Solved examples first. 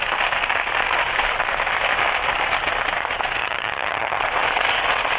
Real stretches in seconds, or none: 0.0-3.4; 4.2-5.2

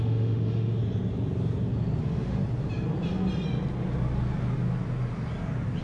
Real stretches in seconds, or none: 0.8-2.0; 2.4-5.8

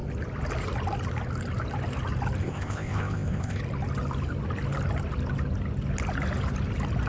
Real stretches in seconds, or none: 0.0-2.4; 3.6-7.1